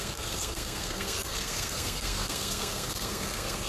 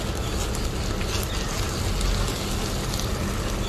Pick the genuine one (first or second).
second